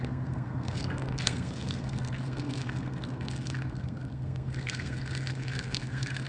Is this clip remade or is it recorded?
remade